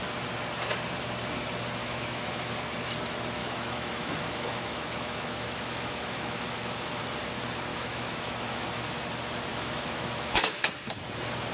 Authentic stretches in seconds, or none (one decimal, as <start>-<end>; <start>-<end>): 0.0-1.8; 2.5-3.4; 7.0-7.7; 8.8-9.5; 10.7-11.5